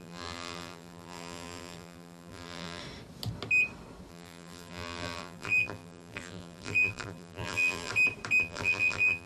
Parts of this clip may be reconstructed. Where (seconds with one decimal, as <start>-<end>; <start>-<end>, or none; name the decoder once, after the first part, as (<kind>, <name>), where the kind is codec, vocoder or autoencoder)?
0.0-2.8 (vocoder, BigVGAN v2); 4.1-7.9; 8.4-9.3